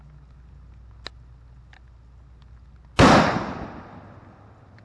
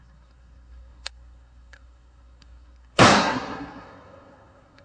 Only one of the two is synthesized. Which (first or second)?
second